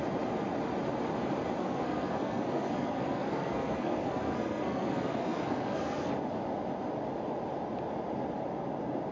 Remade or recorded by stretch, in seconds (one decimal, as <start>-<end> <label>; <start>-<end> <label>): 0.0-1.6 recorded; 1.6-6.1 remade; 6.1-9.1 recorded